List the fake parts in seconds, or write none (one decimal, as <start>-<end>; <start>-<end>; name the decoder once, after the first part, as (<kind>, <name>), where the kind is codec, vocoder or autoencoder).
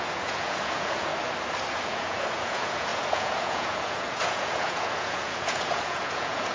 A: 0.0-1.1 (vocoder, Vocos); 1.7-6.5